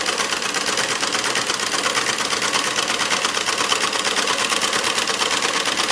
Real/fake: real